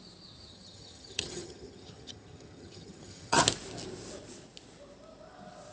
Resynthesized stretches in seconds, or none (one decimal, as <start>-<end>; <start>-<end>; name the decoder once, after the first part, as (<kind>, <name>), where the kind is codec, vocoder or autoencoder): 0.5-3.4 (vocoder, HiFi-GAN)